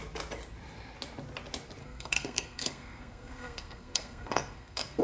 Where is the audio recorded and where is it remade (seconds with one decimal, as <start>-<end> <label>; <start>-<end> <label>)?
0.0-1.8 recorded; 1.8-5.0 remade